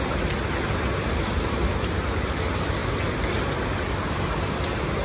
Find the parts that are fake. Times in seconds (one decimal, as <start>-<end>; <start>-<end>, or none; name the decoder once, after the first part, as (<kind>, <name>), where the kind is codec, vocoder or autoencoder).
none